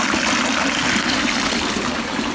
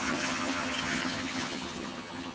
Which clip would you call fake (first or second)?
second